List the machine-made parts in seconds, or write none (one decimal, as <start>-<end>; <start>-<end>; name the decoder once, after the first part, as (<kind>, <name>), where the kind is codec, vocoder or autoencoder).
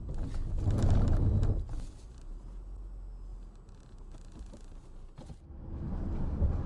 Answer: none